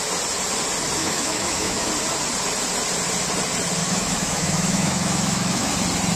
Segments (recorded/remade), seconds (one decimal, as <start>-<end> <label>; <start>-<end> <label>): 0.0-1.0 recorded; 1.0-1.9 remade; 1.9-3.8 recorded; 3.8-5.7 remade; 5.7-6.2 recorded